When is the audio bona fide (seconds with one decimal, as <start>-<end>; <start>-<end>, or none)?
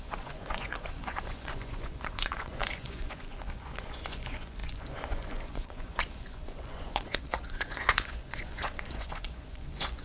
none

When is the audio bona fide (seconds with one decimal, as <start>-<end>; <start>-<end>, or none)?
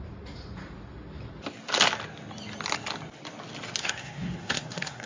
0.0-3.8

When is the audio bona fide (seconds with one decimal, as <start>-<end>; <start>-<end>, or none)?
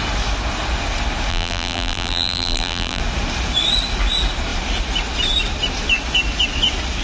0.0-1.3; 3.0-7.0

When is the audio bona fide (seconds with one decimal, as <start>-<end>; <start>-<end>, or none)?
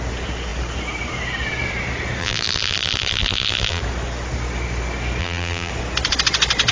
0.0-2.2; 3.8-5.2; 5.7-6.7